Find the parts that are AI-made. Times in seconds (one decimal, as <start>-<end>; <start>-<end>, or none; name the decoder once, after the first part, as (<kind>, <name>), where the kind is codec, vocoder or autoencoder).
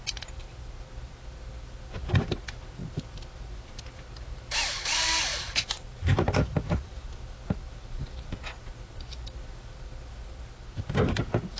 none